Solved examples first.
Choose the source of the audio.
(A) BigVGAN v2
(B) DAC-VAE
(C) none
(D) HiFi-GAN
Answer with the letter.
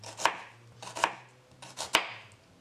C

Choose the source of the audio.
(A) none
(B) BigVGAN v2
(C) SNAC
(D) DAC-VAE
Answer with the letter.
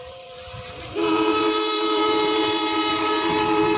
B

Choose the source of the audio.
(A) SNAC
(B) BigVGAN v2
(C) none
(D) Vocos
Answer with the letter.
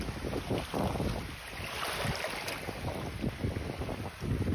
C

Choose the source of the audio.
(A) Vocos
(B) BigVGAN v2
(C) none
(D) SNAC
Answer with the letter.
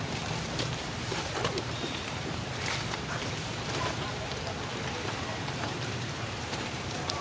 B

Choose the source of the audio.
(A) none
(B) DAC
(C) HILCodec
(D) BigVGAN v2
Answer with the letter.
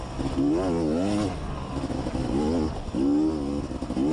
A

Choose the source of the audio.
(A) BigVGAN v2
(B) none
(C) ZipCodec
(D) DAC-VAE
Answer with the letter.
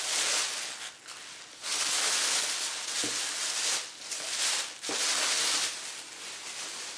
B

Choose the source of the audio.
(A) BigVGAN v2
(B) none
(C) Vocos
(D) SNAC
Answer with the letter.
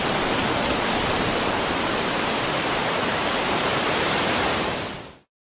A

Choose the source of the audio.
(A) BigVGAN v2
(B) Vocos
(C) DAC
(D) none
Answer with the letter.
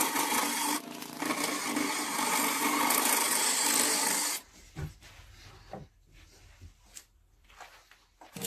D